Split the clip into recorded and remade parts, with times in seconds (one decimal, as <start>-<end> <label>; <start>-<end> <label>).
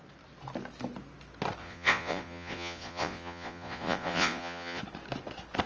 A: 0.0-1.6 recorded; 1.6-4.8 remade; 4.8-5.7 recorded